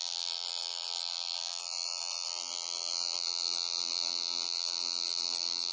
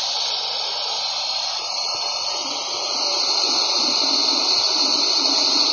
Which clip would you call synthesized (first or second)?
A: first